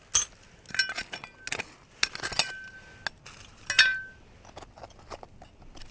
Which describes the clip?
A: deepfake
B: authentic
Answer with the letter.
B